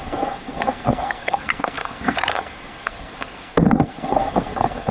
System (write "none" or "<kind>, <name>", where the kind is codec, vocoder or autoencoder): codec, SNAC